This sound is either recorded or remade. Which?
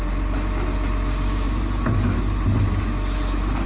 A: recorded